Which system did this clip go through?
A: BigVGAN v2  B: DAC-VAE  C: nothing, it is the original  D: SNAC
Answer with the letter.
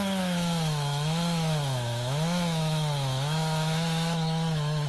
B